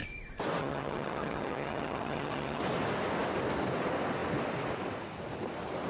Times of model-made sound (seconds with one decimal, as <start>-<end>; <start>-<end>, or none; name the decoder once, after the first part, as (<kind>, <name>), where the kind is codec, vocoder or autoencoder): 0.6-2.6 (vocoder, HiFi-GAN)